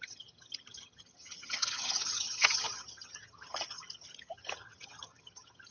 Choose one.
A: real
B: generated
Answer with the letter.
B